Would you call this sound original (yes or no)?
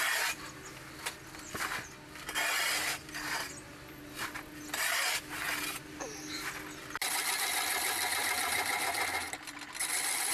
yes